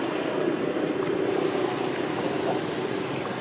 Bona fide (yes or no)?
yes